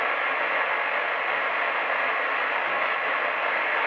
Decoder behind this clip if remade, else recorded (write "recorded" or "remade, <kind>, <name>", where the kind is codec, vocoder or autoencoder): recorded